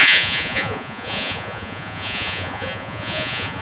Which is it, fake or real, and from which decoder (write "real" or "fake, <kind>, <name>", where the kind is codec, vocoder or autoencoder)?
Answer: fake, vocoder, Vocos